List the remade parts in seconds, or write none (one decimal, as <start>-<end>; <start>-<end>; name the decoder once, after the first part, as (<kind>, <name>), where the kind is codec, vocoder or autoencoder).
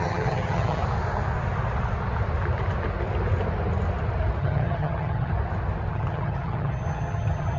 0.0-0.8 (vocoder, HiFi-GAN); 4.4-5.3; 5.9-7.6